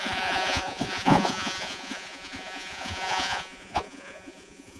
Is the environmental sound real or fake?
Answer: fake